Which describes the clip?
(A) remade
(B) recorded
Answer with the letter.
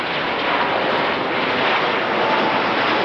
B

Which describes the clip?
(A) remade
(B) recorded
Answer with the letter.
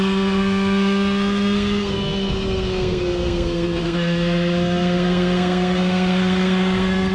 A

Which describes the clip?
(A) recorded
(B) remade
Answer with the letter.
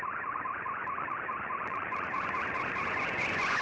B